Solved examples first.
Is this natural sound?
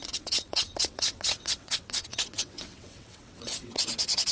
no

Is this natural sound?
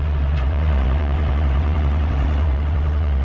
no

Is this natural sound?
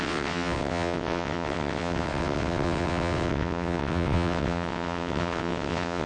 no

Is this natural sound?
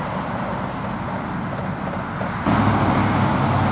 yes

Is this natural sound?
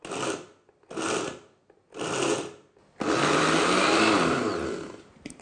yes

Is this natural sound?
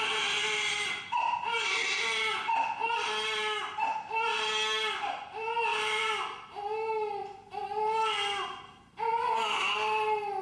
yes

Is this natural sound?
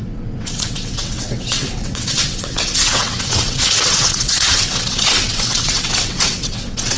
no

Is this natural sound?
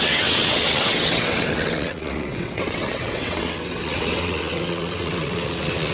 no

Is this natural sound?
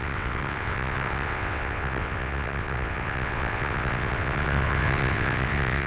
no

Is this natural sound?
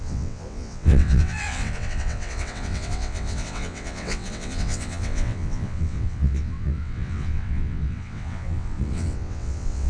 no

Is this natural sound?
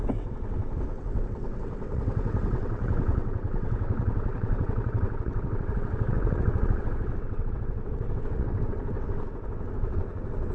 no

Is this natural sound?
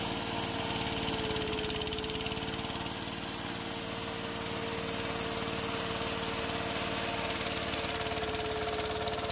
yes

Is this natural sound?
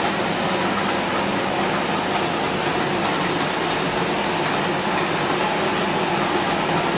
yes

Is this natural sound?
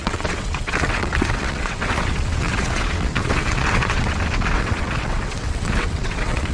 no